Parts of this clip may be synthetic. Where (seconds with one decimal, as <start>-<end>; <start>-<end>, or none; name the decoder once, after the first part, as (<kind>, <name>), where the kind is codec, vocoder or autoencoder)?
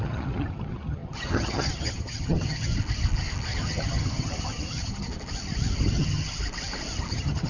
0.0-2.7 (vocoder, HiFi-GAN); 3.6-5.1; 5.9-6.4; 7.1-7.5